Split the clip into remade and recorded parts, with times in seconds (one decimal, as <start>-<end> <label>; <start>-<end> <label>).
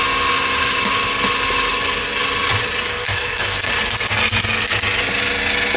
0.0-2.8 recorded; 2.8-3.7 remade; 3.7-5.8 recorded